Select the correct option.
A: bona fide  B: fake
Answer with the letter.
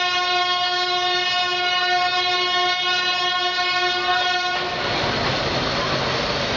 A